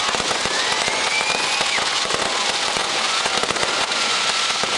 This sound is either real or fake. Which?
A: fake